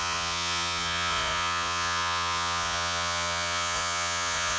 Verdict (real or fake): fake